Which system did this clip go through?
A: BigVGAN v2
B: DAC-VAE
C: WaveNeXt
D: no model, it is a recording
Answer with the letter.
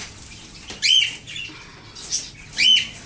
D